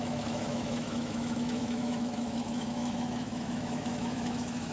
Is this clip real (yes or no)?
no